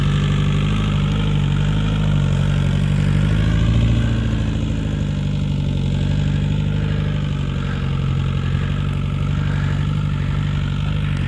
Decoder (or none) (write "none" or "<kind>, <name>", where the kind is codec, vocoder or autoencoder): none